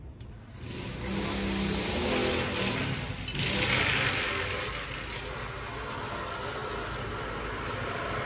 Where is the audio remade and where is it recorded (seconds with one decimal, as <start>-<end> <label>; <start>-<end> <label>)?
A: 0.0-8.3 recorded